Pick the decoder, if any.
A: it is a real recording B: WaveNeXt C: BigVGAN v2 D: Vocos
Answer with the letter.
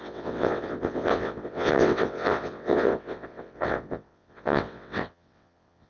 B